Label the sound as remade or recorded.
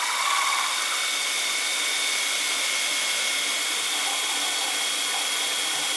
recorded